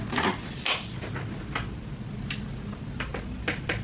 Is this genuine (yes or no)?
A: yes